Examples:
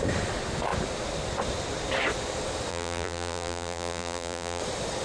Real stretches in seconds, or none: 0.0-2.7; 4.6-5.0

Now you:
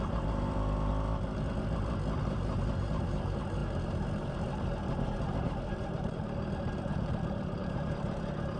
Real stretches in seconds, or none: 0.9-2.2

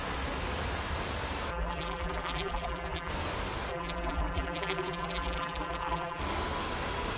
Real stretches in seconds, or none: 0.0-1.5; 3.1-3.7; 6.2-7.2